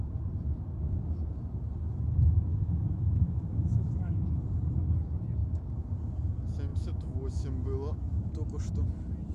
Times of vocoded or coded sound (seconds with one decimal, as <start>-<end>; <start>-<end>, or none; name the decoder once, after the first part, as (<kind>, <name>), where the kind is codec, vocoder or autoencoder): 2.5-4.2 (autoencoder, DAC-VAE); 6.7-8.2